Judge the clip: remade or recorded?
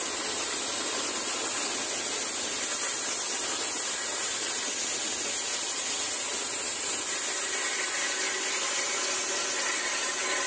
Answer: recorded